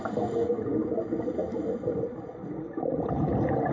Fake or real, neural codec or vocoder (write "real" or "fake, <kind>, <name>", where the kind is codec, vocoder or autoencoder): real